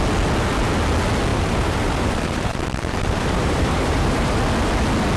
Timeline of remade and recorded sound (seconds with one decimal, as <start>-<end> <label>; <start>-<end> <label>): 0.0-1.3 recorded; 1.3-4.4 remade; 4.4-5.2 recorded